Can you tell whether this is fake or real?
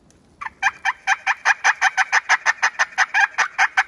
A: real